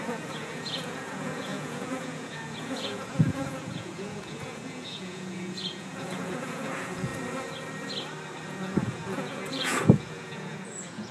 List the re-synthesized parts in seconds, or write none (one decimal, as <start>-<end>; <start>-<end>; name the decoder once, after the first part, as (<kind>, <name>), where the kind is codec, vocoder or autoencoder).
0.0-7.1 (vocoder, Vocos); 8.5-11.1